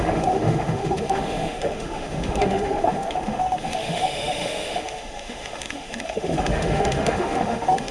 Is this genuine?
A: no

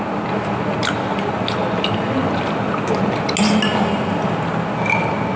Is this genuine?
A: yes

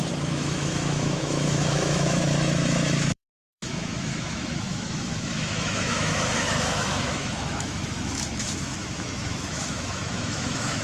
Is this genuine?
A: no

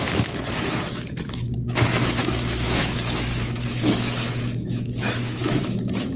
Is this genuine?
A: no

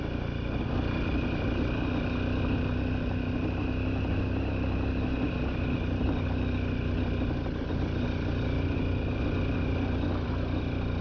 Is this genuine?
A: yes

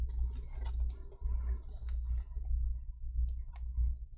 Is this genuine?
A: yes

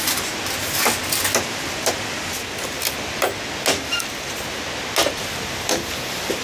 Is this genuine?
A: yes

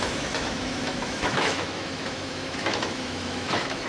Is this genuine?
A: no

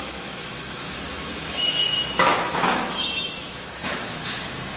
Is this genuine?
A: no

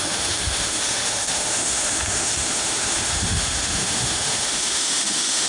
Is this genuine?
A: no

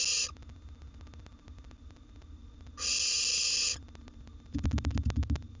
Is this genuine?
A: yes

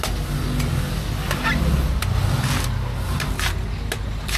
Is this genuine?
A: yes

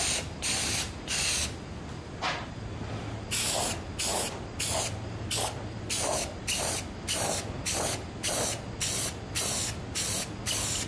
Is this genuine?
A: yes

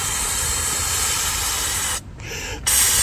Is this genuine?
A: yes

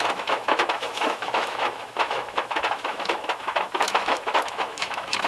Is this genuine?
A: no